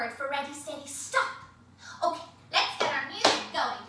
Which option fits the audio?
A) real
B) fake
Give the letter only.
B